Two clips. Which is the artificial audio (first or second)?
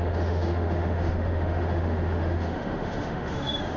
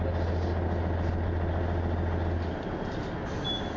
first